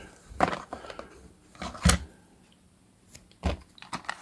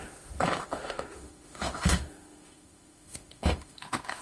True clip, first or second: first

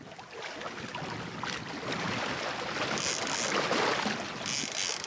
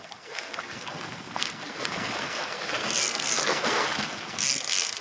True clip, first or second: first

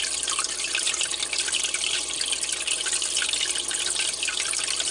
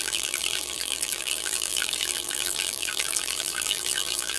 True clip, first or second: first